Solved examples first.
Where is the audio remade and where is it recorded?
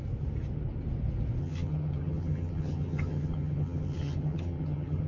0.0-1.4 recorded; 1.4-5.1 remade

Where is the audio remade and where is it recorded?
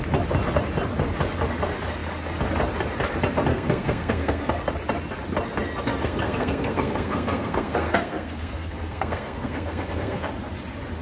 0.0-3.5 recorded; 3.5-4.6 remade; 4.6-5.9 recorded; 5.9-10.3 remade; 10.3-11.0 recorded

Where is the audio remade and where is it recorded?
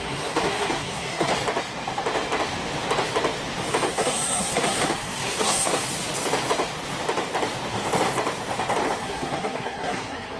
0.0-1.3 remade; 1.3-3.9 recorded; 3.9-5.8 remade; 5.8-9.0 recorded; 9.0-10.4 remade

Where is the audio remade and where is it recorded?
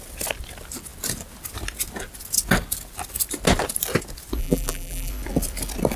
0.0-4.4 recorded; 4.4-5.1 remade; 5.1-6.0 recorded